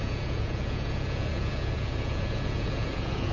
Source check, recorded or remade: remade